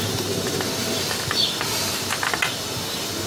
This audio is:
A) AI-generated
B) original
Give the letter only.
B